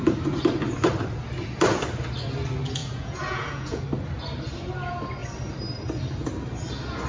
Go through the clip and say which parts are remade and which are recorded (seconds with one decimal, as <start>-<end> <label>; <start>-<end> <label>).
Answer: 0.0-2.8 recorded; 2.8-3.8 remade; 3.8-7.1 recorded